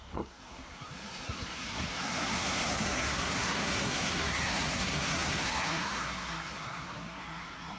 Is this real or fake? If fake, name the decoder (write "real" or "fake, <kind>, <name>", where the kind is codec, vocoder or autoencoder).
fake, codec, SNAC